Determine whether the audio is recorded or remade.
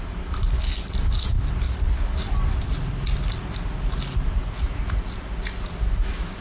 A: recorded